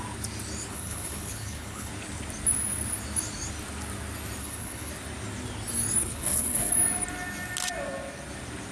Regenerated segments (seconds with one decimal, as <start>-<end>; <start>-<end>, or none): 0.7-1.9; 4.4-4.9; 6.0-6.7